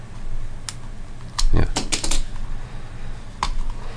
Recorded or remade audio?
recorded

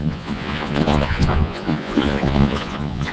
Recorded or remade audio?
remade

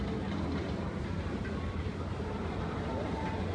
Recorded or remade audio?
recorded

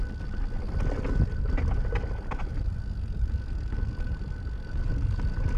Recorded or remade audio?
recorded